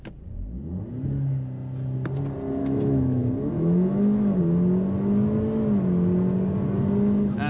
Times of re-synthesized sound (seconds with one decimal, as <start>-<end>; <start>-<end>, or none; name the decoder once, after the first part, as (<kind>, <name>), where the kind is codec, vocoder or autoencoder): 2.6-4.4 (autoencoder, DAC-VAE)